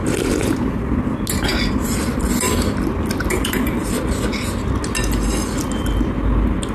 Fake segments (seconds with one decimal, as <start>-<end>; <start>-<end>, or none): 1.5-4.0